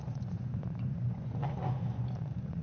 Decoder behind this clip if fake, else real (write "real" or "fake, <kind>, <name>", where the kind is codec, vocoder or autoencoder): fake, vocoder, Vocos